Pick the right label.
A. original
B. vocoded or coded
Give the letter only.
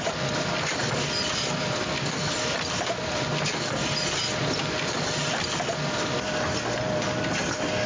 A